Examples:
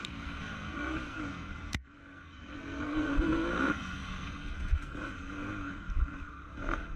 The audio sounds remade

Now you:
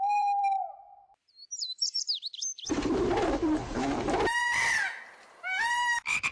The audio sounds remade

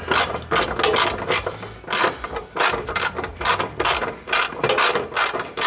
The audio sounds recorded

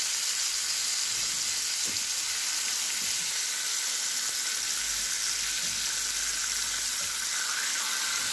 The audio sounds recorded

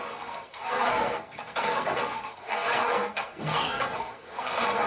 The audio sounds remade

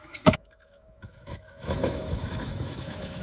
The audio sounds remade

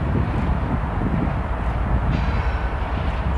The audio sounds recorded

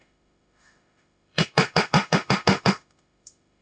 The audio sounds remade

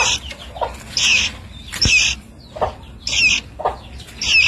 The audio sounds recorded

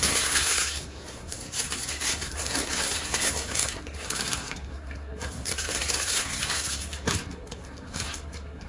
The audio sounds remade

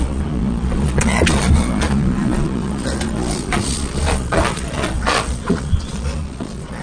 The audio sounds remade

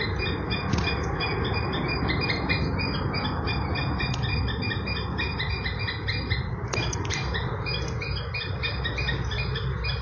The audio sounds recorded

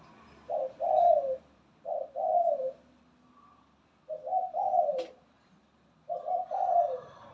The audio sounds remade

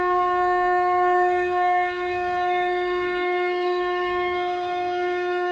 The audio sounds remade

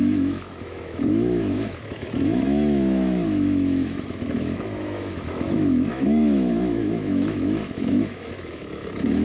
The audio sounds remade